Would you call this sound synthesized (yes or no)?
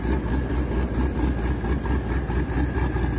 no